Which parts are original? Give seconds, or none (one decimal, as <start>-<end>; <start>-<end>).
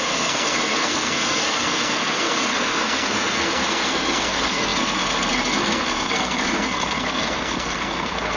none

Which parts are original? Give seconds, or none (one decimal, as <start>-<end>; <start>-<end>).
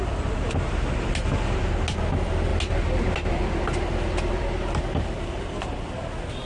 0.0-6.5